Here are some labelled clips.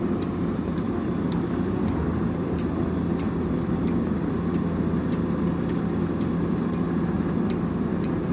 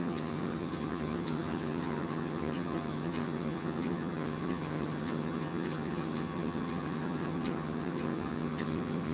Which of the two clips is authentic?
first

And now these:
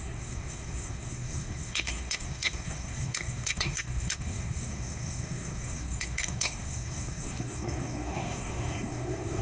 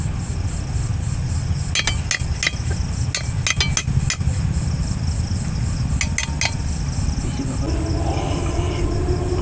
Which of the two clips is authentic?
second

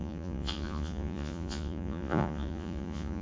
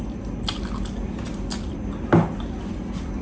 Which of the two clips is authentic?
second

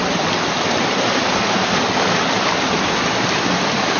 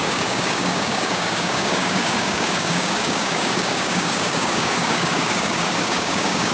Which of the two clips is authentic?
first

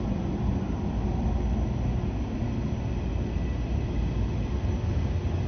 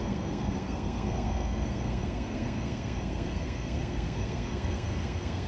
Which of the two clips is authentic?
first